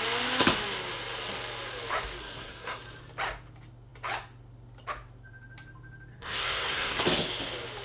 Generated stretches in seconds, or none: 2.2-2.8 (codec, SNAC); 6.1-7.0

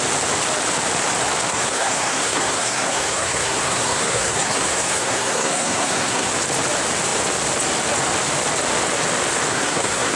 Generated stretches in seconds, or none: 1.5-6.3 (codec, SNAC); 9.5-10.2

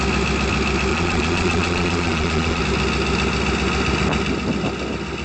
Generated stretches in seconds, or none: 0.9-2.6 (vocoder, Vocos)

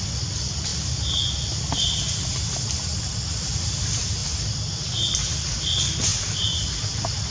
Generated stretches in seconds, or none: 6.1-6.7 (vocoder, BigVGAN v2)

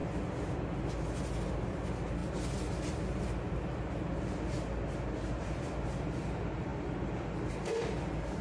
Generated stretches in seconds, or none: none

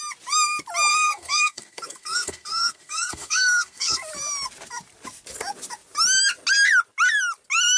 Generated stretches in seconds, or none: 0.9-4.0 (codec, SNAC)